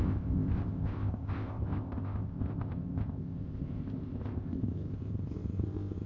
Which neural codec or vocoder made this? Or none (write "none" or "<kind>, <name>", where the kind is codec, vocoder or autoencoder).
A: codec, ZipCodec